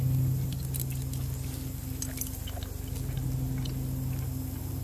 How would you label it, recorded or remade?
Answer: recorded